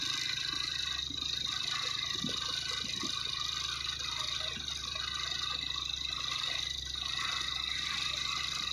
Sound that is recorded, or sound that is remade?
recorded